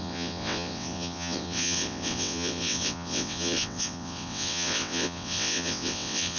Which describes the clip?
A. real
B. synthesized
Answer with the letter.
B